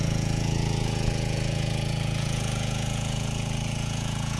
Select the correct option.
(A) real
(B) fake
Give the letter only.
B